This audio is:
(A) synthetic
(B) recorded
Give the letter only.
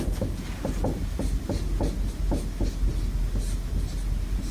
B